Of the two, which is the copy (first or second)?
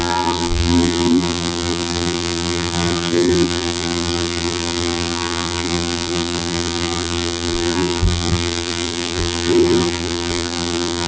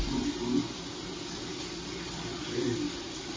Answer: first